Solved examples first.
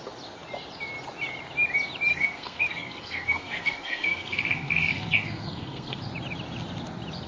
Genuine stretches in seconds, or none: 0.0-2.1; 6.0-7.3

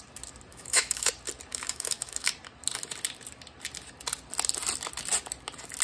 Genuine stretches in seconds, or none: 0.0-0.5; 1.1-1.5; 2.3-5.8

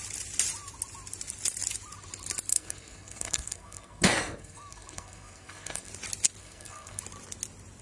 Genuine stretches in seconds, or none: 0.0-2.5; 5.9-6.4; 7.0-7.8

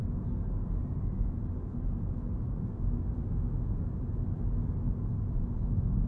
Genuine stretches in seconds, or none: 0.0-3.3; 3.7-6.1

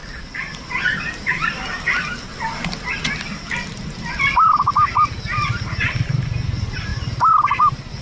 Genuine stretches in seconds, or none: 0.7-8.0

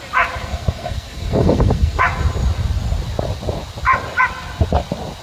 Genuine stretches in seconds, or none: 0.0-0.4; 2.0-5.2

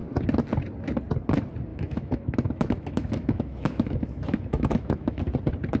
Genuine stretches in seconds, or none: 0.0-1.7; 5.2-5.8

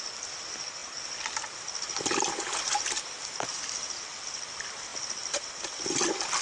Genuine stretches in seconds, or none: 0.0-6.4